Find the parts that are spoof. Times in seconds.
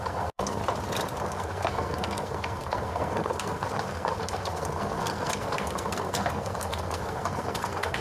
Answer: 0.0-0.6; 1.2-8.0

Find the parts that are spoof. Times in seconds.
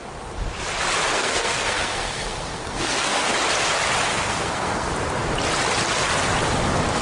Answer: 1.1-3.3; 4.1-4.9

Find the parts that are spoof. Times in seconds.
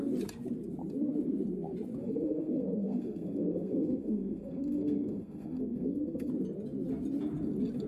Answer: 2.0-6.3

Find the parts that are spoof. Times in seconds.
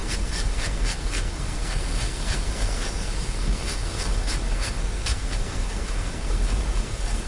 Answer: 0.0-7.3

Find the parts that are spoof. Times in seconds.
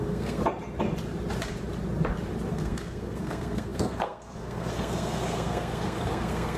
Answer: 0.0-0.4; 2.5-6.6